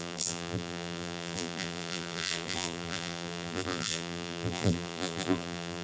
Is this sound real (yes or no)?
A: no